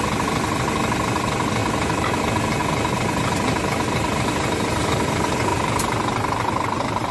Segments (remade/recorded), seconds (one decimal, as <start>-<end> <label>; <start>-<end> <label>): 0.0-7.1 recorded